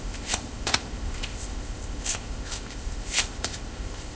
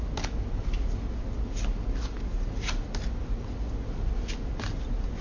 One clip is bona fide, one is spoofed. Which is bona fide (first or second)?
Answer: second